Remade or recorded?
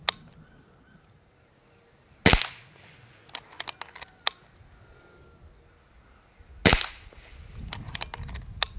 recorded